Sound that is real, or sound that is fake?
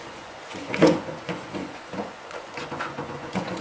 fake